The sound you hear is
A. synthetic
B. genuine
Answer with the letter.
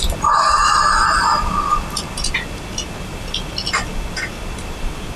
B